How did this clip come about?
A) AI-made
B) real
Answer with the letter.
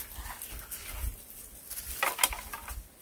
B